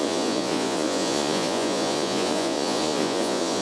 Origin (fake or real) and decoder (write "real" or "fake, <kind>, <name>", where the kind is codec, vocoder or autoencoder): fake, vocoder, Vocos